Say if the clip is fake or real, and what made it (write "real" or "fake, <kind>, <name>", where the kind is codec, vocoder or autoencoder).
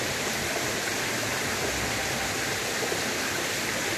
real